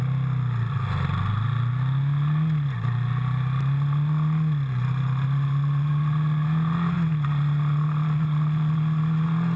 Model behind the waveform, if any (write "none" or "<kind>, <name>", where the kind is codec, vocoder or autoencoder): none